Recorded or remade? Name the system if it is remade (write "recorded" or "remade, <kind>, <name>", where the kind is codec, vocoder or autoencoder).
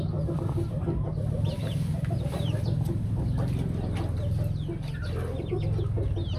recorded